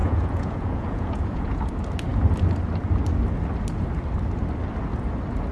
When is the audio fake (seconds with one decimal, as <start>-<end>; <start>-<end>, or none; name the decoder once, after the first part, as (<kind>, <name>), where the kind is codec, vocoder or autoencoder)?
0.0-1.7 (vocoder, Vocos)